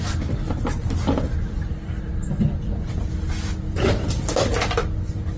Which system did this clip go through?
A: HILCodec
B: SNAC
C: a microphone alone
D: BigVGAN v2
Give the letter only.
C